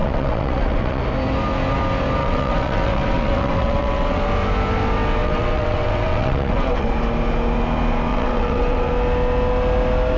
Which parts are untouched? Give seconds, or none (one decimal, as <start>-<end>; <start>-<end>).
1.0-2.2; 4.2-5.2; 6.9-8.1; 8.9-10.2